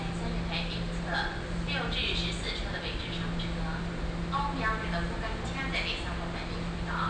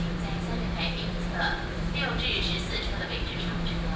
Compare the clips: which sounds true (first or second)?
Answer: first